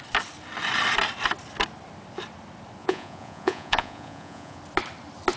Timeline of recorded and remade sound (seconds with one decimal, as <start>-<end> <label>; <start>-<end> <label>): 0.0-2.8 recorded; 2.8-4.6 remade; 4.6-5.4 recorded

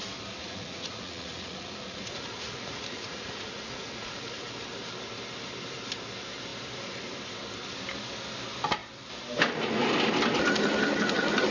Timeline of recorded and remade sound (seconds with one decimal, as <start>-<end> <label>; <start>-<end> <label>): 0.0-0.4 recorded; 0.4-4.5 remade; 4.5-11.5 recorded

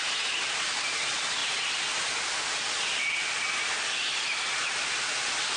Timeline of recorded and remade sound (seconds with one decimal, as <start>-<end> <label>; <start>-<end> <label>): 0.0-5.6 recorded

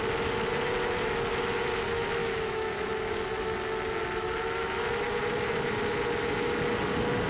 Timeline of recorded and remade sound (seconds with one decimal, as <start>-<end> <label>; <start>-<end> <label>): 0.0-2.2 recorded; 2.2-2.9 remade; 2.9-7.3 recorded

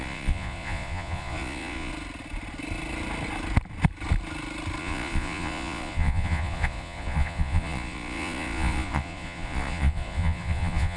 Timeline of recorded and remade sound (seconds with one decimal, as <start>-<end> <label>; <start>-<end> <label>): 0.0-1.9 remade; 1.9-4.8 recorded; 4.8-11.0 remade

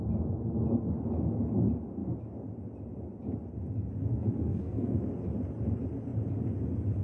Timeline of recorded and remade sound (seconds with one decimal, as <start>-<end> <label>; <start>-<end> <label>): 0.0-4.1 recorded; 4.1-5.1 remade; 5.1-7.0 recorded

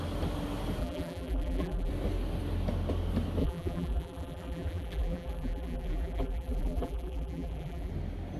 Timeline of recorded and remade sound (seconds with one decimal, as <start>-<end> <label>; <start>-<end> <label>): 0.0-0.8 recorded; 0.8-1.9 remade; 1.9-3.4 recorded; 3.4-7.9 remade; 7.9-8.4 recorded